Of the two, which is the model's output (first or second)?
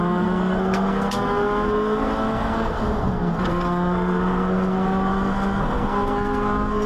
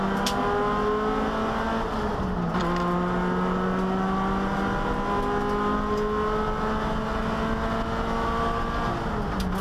first